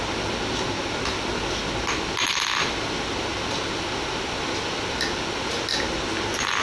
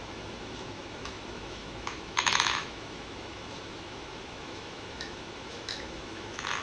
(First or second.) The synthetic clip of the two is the second